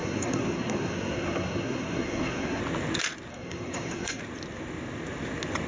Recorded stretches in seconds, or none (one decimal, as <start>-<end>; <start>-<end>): 2.6-3.3; 4.2-5.7